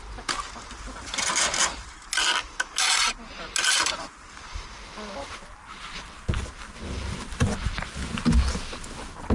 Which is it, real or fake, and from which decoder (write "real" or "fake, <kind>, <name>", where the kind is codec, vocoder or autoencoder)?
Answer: real